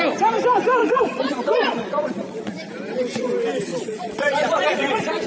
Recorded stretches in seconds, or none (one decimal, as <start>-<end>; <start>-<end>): 0.0-0.8; 2.5-3.7